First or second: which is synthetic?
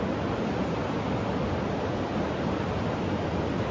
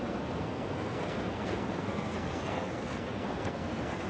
second